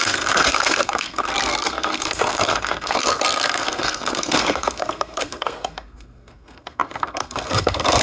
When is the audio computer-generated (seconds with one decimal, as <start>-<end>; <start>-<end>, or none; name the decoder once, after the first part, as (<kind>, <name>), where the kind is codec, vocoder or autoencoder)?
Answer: 0.0-8.0 (codec, SNAC)